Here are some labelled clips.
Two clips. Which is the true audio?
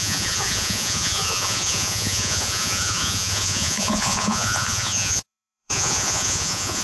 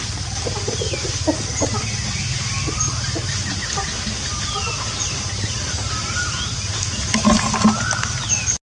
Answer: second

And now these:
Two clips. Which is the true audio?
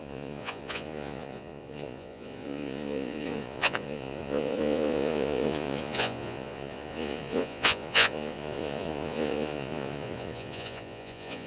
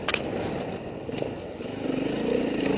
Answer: second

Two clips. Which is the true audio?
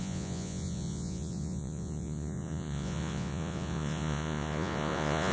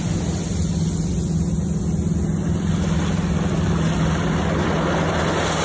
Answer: second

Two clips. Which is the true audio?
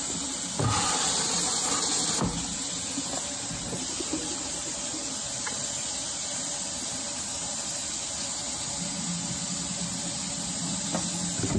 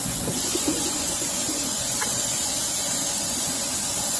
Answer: first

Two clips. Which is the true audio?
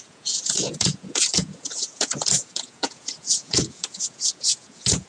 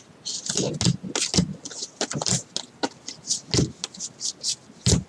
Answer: second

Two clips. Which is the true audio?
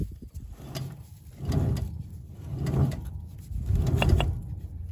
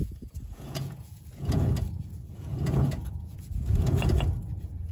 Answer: first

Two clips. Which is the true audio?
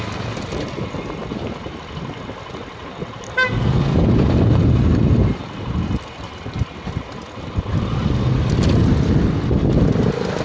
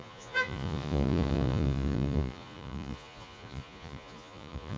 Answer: first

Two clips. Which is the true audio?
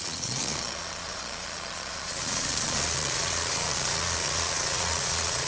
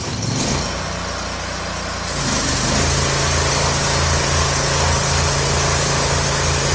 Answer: second